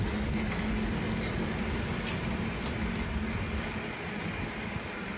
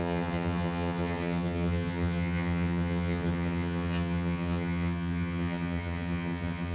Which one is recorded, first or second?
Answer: first